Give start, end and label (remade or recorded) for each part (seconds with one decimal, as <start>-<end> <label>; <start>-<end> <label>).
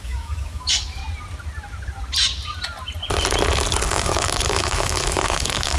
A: 0.0-1.0 remade; 1.0-3.9 recorded; 3.9-5.8 remade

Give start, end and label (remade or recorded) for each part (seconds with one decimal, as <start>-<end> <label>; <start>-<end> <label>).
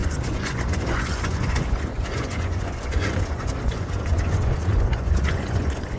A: 0.0-6.0 remade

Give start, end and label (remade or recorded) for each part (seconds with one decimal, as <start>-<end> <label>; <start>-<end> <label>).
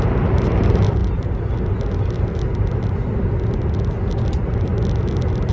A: 0.0-1.0 remade; 1.0-4.3 recorded; 4.3-4.7 remade; 4.7-5.5 recorded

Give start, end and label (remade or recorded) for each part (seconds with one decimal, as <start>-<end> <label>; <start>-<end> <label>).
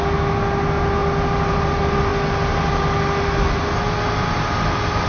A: 0.0-5.1 recorded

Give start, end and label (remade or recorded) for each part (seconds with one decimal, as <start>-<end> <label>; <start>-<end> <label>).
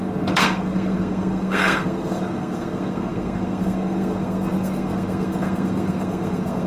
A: 0.0-6.7 remade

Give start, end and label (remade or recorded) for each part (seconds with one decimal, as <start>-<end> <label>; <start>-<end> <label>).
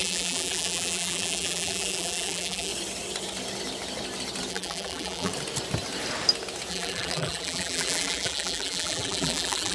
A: 0.0-2.7 remade; 2.7-4.5 recorded; 4.5-5.3 remade; 5.3-6.7 recorded; 6.7-9.7 remade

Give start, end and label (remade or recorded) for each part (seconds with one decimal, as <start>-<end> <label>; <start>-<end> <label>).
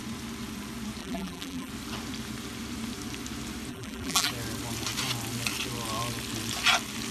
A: 0.0-1.0 recorded; 1.0-1.7 remade; 1.7-3.7 recorded; 3.7-4.3 remade; 4.3-7.1 recorded